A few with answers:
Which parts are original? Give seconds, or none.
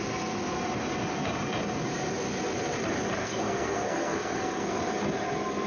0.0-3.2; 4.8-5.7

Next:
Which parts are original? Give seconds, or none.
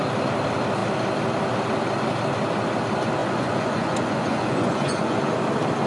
0.0-3.2; 5.3-5.9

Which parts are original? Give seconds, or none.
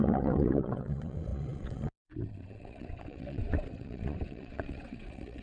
none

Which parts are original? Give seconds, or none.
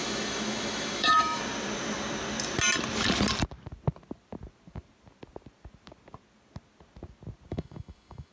1.4-7.5